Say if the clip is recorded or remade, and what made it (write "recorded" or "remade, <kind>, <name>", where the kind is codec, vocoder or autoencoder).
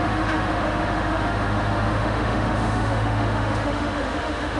remade, autoencoder, DAC-VAE